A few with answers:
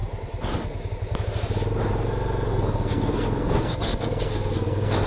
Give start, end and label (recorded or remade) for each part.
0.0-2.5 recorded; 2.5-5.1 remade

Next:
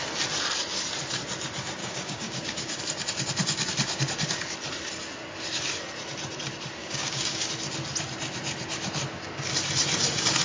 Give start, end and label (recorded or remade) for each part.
0.0-1.8 recorded; 1.8-2.8 remade; 2.8-6.8 recorded; 6.8-7.5 remade; 7.5-10.4 recorded

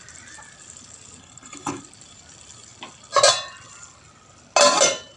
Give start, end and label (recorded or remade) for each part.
0.0-1.2 recorded; 1.2-1.8 remade; 1.8-5.2 recorded

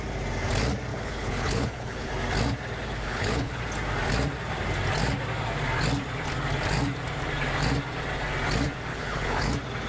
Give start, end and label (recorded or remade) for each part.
0.0-0.9 recorded; 0.9-2.1 remade; 2.1-3.0 recorded; 3.0-3.6 remade; 3.6-8.9 recorded; 8.9-9.5 remade; 9.5-9.9 recorded

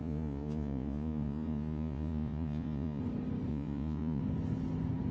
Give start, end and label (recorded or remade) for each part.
0.0-3.0 remade; 3.0-3.5 recorded; 3.5-4.2 remade; 4.2-5.1 recorded